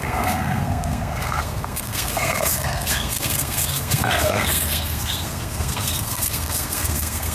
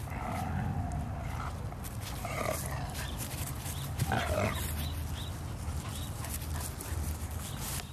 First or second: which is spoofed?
first